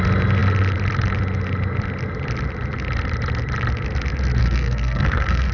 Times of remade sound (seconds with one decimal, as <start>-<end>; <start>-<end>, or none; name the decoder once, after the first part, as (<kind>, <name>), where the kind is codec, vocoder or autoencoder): 4.4-5.5 (codec, SNAC)